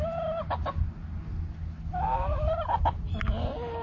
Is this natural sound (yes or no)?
yes